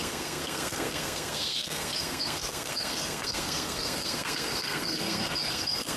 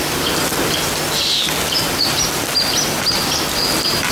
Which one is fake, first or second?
first